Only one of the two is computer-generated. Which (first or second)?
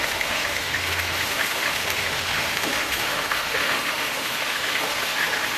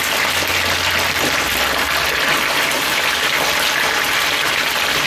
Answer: first